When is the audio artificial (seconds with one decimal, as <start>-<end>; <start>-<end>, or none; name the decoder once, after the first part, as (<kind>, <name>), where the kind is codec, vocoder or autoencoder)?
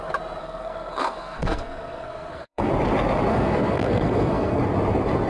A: 0.4-2.7 (codec, SNAC); 3.3-4.6